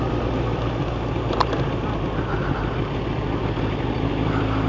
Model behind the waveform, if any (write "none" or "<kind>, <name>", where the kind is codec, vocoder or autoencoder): none